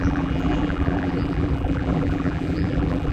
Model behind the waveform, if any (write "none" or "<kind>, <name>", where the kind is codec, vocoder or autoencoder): vocoder, BigVGAN v2